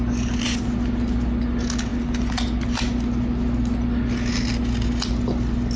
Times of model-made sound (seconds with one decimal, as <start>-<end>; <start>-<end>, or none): none